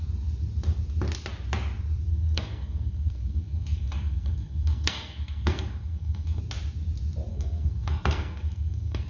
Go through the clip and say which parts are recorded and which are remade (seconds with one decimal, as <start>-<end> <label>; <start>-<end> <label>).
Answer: 0.0-2.1 recorded; 2.1-6.4 remade; 6.4-7.3 recorded; 7.3-9.1 remade